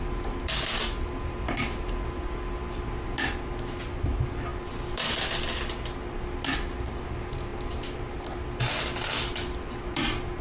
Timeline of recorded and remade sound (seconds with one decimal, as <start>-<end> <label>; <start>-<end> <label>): 0.0-10.4 recorded